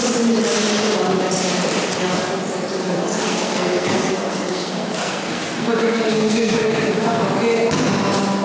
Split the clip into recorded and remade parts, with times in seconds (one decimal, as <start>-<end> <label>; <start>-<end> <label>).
0.0-2.8 recorded; 2.8-7.2 remade; 7.2-8.4 recorded

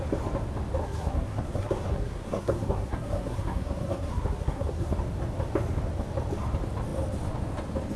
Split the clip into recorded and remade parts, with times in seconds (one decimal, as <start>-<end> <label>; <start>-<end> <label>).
0.0-0.8 recorded; 0.8-4.9 remade; 4.9-8.0 recorded

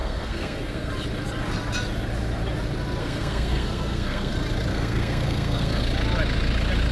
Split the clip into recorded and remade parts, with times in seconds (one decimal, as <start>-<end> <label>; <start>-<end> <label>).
0.0-0.9 remade; 0.9-3.0 recorded; 3.0-4.3 remade; 4.3-4.7 recorded; 4.7-5.8 remade; 5.8-6.9 recorded

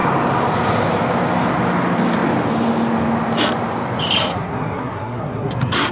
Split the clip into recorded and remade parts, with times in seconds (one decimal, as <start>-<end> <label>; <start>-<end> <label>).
0.0-4.3 recorded; 4.3-5.9 remade

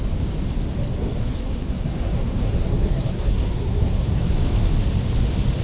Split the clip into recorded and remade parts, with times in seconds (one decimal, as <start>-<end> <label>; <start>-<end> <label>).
0.0-0.9 recorded; 0.9-4.3 remade; 4.3-5.6 recorded

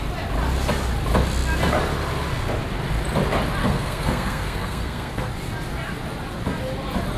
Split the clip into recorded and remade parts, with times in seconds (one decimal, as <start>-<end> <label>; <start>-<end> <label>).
0.0-3.6 recorded; 3.6-5.3 remade; 5.3-7.2 recorded